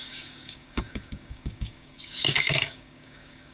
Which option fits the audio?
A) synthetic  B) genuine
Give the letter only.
A